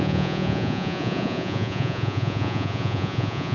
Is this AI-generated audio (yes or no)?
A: yes